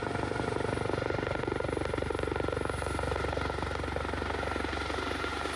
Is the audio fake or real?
real